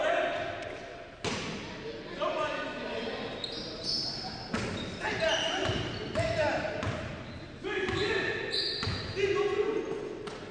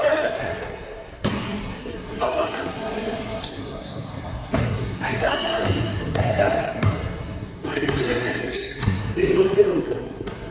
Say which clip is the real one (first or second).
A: first